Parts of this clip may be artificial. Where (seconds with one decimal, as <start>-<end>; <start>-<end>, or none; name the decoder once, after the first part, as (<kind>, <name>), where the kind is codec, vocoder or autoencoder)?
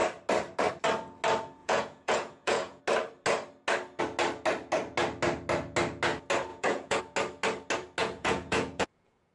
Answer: 1.6-2.8 (vocoder, Vocos); 6.5-7.0; 8.0-9.3